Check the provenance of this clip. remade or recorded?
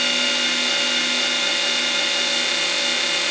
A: recorded